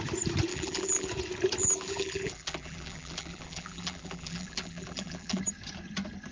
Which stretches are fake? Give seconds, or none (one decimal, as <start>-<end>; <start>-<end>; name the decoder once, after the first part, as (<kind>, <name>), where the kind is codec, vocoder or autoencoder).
0.5-1.1 (vocoder, BigVGAN v2); 1.6-5.4

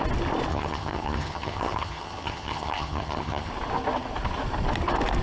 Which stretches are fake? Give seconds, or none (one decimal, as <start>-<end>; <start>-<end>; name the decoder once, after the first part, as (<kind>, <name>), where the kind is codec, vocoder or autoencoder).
0.5-3.5 (vocoder, HiFi-GAN)

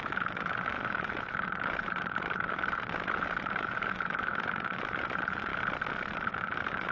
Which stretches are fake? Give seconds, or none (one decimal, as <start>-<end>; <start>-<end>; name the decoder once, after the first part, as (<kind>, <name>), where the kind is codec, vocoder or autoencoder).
0.0-5.5 (autoencoder, DAC-VAE); 6.3-6.9

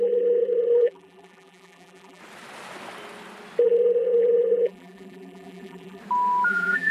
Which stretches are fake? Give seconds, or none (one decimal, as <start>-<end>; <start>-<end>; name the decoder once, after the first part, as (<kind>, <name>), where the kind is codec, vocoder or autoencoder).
0.0-2.2 (vocoder, BigVGAN v2); 3.6-6.0; 6.5-6.9

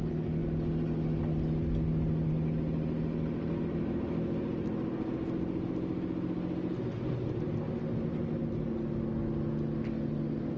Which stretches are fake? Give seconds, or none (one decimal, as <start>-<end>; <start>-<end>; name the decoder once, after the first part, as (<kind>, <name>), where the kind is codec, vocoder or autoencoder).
none

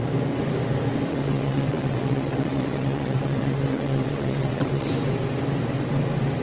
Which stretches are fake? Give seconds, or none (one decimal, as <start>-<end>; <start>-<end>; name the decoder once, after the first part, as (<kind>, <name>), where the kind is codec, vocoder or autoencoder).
1.1-4.9 (vocoder, WaveNeXt)

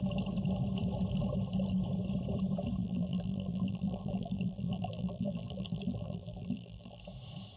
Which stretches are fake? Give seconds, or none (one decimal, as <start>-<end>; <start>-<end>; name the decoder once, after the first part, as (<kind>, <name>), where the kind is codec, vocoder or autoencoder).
2.8-7.0 (vocoder, BigVGAN v2)